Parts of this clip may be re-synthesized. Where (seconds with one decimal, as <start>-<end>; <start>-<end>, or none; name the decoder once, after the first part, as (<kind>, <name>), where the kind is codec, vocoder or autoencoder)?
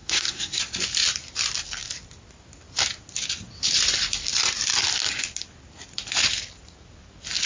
0.0-0.6 (codec, SNAC)